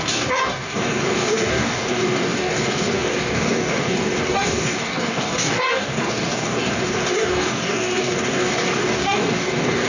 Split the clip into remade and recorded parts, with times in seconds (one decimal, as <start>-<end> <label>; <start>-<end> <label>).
0.0-9.9 remade